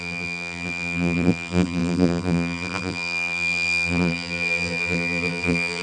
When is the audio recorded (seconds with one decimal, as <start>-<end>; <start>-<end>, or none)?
none